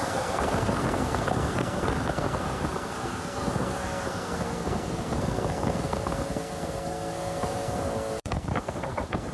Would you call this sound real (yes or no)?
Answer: no